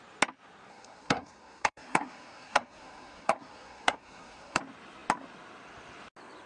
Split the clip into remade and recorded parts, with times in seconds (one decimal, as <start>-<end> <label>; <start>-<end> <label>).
0.0-0.7 recorded; 0.7-4.6 remade; 4.6-6.5 recorded